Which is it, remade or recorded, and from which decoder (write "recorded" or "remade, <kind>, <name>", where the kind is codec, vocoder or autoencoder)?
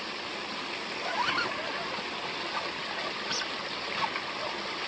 recorded